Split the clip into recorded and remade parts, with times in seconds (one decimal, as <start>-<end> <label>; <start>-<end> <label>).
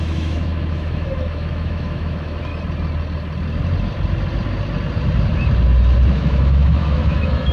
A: 0.0-2.5 remade; 2.5-6.1 recorded; 6.1-7.5 remade